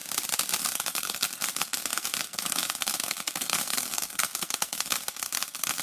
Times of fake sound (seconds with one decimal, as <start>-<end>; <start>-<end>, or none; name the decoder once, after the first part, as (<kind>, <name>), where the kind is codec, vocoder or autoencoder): 0.6-5.8 (codec, SNAC)

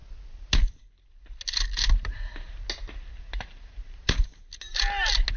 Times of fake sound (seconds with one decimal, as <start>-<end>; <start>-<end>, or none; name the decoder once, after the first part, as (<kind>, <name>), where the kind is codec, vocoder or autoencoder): none

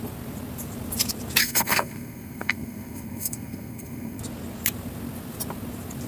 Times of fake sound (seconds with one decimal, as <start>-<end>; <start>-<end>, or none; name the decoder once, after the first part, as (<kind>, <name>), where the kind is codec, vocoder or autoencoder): 1.4-4.2 (codec, SNAC)

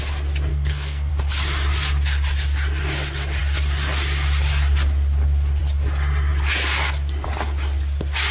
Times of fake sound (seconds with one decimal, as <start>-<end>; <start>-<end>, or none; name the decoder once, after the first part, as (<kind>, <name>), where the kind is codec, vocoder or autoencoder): 0.5-1.1 (codec, SNAC)

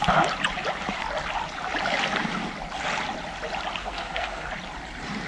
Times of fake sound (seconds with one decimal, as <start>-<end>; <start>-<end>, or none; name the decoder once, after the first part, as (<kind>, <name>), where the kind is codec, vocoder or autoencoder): 3.8-4.5 (codec, SNAC)

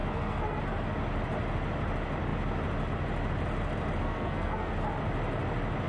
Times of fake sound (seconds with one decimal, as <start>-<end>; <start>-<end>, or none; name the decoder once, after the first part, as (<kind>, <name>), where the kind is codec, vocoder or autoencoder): 0.0-0.6 (codec, SNAC); 4.0-4.7